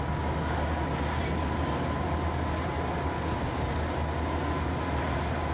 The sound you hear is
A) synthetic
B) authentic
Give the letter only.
B